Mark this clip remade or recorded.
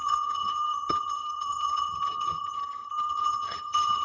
remade